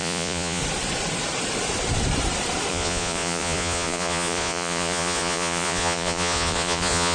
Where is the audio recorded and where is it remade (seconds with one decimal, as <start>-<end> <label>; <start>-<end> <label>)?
0.0-0.6 remade; 0.6-2.7 recorded; 2.7-7.1 remade